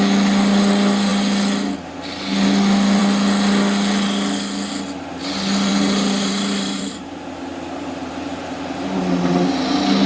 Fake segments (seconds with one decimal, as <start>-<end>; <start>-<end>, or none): 5.7-8.6